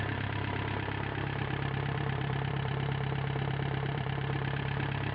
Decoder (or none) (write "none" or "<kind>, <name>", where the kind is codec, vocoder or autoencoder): vocoder, BigVGAN v2